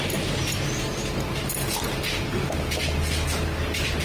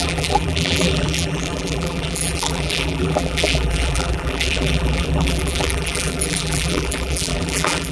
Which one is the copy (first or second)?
second